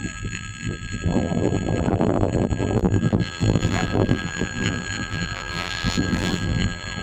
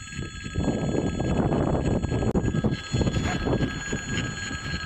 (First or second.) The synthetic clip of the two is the first